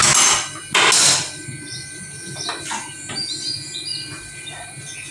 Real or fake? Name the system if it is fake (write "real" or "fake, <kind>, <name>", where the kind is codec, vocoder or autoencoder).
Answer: real